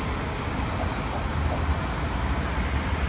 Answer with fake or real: real